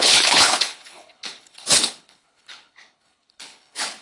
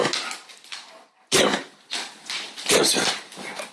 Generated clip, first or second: first